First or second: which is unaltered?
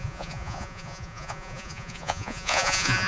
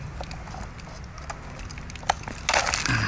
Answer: second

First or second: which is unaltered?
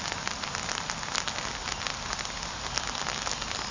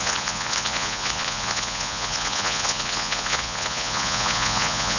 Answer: first